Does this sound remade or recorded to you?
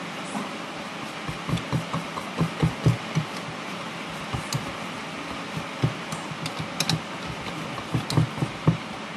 recorded